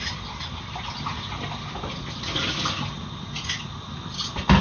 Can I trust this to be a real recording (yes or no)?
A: yes